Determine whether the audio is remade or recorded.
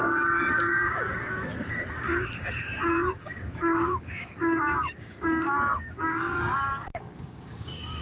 remade